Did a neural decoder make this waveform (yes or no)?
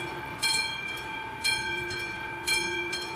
yes